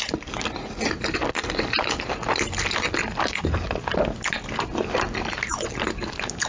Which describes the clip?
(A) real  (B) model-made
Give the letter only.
A